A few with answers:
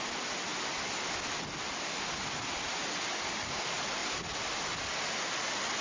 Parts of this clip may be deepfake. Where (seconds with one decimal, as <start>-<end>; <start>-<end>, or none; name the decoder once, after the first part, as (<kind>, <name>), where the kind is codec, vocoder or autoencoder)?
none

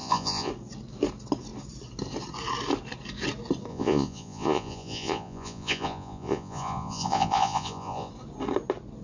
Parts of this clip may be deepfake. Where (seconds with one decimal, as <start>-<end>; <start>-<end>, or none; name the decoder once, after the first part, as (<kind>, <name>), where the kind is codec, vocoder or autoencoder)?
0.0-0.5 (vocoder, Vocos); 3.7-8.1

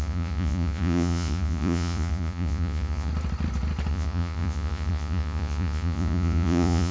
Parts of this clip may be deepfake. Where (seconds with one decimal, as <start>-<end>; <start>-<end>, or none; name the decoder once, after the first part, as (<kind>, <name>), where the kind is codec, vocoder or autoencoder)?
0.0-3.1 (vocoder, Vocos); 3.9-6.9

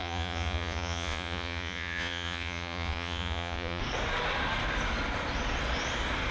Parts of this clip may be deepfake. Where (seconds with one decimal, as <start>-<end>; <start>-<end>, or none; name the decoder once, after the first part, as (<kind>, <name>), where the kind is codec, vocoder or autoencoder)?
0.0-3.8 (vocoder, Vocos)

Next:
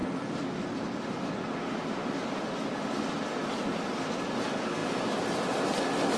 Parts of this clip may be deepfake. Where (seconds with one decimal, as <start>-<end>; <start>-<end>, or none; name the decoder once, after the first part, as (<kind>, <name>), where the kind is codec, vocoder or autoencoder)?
none